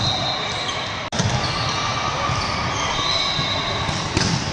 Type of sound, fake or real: real